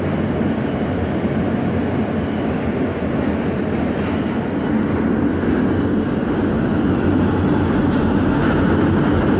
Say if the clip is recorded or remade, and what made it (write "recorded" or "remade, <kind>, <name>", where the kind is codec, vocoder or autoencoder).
recorded